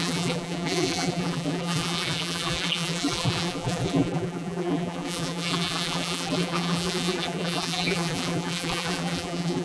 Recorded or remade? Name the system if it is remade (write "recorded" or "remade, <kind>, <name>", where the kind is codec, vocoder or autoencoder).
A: remade, vocoder, BigVGAN v2